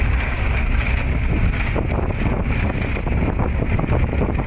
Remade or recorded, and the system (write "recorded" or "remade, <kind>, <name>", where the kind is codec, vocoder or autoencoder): recorded